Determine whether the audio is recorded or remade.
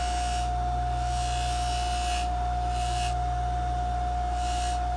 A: recorded